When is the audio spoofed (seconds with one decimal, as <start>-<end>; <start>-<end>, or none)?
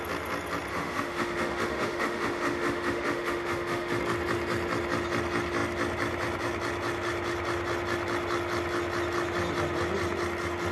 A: 0.7-4.0